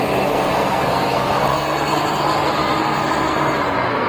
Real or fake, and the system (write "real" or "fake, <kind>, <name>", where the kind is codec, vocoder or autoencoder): fake, codec, SNAC